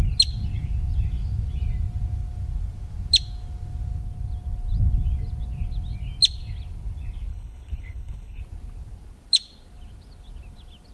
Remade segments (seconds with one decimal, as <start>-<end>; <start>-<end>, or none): 7.3-8.4